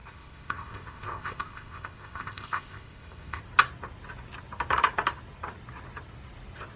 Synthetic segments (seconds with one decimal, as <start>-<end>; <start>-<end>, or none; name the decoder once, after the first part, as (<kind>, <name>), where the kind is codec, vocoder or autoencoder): 0.0-3.4 (codec, ZipCodec)